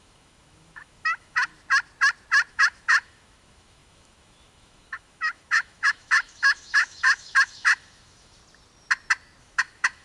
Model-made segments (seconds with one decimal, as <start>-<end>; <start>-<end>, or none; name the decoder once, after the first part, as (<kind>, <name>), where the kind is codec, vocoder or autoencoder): 0.0-1.5 (autoencoder, DAC-VAE); 2.5-8.4; 9.4-10.0